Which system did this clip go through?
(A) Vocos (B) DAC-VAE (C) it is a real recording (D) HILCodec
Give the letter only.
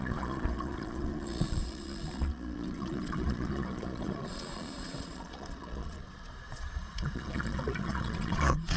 A